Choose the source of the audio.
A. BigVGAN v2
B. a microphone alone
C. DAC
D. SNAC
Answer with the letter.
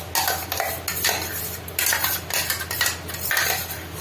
B